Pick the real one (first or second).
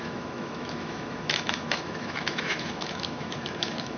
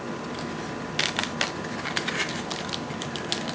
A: second